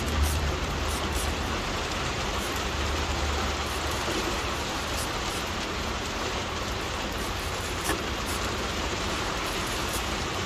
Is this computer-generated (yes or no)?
yes